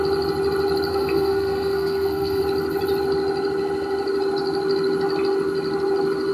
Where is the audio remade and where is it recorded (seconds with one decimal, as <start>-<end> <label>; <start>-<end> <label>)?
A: 0.0-0.9 recorded; 0.9-2.4 remade; 2.4-6.3 recorded